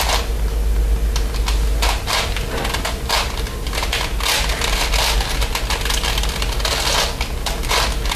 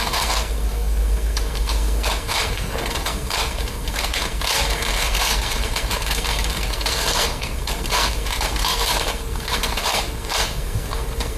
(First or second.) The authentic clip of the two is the first